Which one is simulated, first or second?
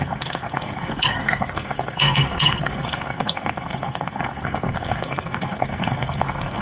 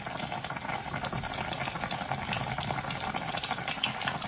first